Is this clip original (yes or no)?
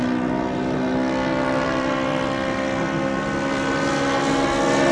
yes